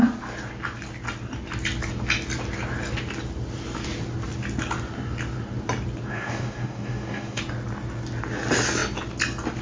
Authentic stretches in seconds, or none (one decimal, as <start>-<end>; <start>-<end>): 0.0-6.1; 7.4-9.6